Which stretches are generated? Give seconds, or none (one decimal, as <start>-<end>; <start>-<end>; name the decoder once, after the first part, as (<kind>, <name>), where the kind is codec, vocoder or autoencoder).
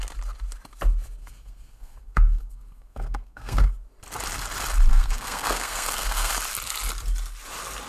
1.2-3.7 (codec, SNAC); 4.9-6.3